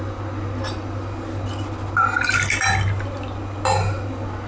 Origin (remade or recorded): recorded